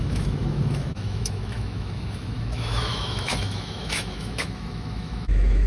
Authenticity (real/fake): fake